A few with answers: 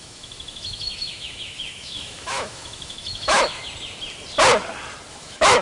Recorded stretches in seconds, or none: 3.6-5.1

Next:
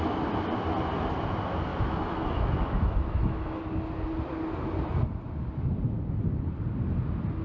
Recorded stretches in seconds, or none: 0.0-1.7; 3.6-7.4

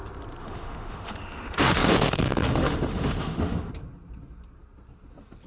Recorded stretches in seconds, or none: 0.0-0.4; 3.7-5.5

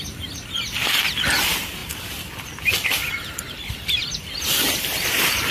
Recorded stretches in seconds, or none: 0.0-5.5

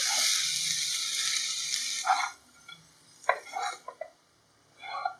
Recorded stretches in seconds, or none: 0.0-5.2

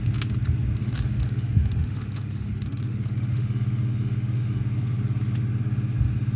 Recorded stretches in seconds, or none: 0.0-0.8; 4.6-6.4

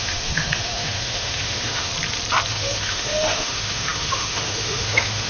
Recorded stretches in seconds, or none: 1.9-2.5